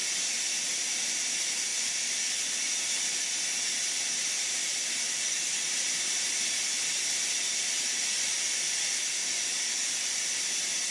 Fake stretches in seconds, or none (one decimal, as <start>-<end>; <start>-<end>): 0.0-0.6